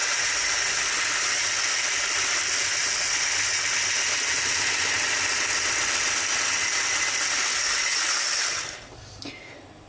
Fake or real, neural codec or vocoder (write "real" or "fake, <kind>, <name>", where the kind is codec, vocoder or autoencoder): real